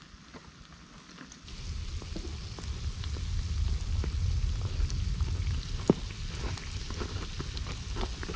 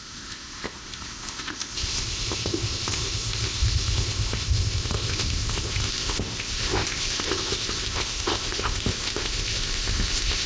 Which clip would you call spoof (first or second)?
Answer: second